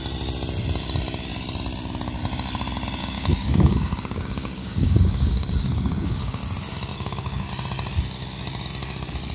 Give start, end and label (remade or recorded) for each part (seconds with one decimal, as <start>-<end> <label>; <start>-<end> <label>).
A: 0.0-3.0 recorded; 3.0-6.4 remade; 6.4-6.9 recorded; 6.9-7.5 remade; 7.5-9.3 recorded